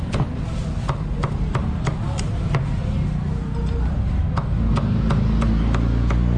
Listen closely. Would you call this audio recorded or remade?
recorded